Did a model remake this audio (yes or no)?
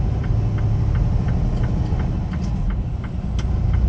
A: no